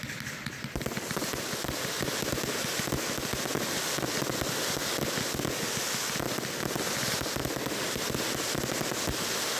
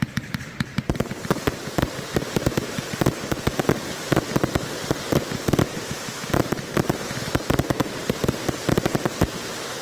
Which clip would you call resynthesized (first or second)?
second